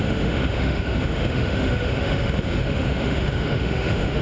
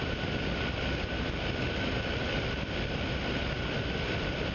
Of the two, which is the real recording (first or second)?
second